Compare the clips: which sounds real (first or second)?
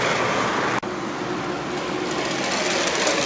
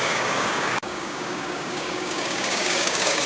first